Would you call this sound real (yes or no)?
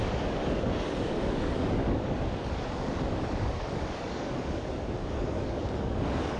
no